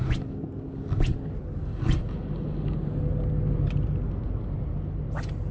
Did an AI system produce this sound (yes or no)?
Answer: no